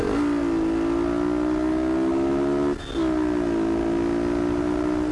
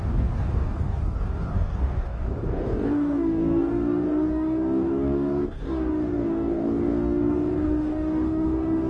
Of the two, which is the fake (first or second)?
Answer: second